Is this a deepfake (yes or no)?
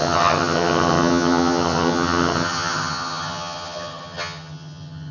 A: yes